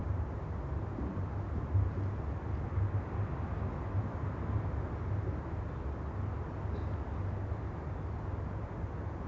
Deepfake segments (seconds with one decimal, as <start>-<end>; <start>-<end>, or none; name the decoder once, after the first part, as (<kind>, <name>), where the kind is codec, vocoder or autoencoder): 0.0-1.5 (vocoder, BigVGAN v2)